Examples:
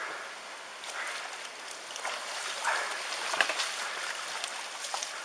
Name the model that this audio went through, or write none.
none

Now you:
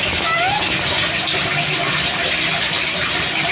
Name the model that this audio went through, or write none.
none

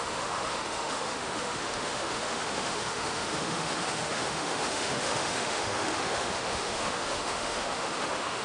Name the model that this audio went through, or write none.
autoencoder, DAC-VAE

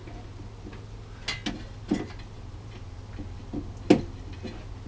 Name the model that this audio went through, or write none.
none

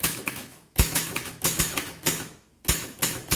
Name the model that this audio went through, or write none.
autoencoder, DAC-VAE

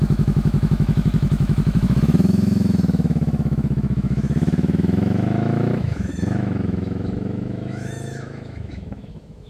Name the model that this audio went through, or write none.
autoencoder, DAC-VAE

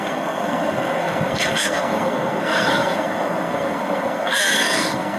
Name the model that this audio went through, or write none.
codec, SNAC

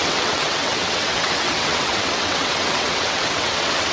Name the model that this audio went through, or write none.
vocoder, WaveNeXt